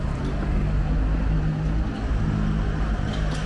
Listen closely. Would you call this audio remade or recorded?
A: recorded